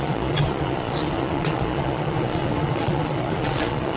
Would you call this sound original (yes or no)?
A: no